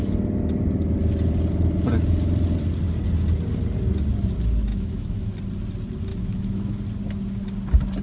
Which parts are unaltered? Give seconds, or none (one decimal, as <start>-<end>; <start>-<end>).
0.0-4.7; 5.3-6.1; 6.8-8.0